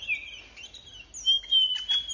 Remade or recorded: recorded